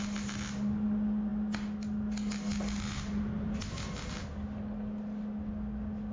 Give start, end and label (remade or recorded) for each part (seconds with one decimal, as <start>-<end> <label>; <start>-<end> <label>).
0.0-6.1 recorded

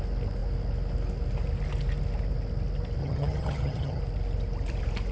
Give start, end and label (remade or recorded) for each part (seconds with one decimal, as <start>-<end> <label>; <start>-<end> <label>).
0.0-3.0 recorded; 3.0-4.0 remade; 4.0-5.1 recorded

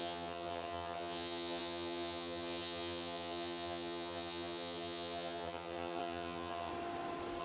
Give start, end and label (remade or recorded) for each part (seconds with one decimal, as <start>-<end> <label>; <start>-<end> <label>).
0.0-6.7 remade; 6.7-7.4 recorded

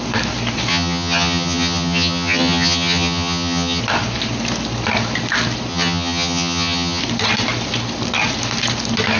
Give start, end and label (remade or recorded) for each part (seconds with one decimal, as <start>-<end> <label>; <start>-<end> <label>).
0.0-0.7 recorded; 0.7-3.8 remade; 3.8-5.7 recorded; 5.7-7.0 remade; 7.0-9.2 recorded

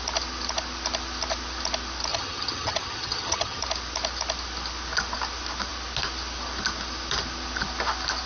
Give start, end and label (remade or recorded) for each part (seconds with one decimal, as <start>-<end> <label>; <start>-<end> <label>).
0.0-2.1 recorded; 2.1-3.6 remade; 3.6-8.3 recorded

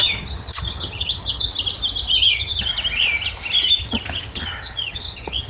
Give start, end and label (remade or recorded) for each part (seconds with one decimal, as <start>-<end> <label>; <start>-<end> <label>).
0.0-1.5 remade; 1.5-2.2 recorded; 2.2-2.7 remade; 2.7-3.8 recorded; 3.8-5.5 remade